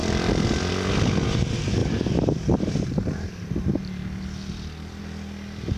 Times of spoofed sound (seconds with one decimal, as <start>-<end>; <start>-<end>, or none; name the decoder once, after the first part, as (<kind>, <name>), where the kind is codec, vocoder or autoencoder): 0.0-0.7 (vocoder, BigVGAN v2); 1.8-3.3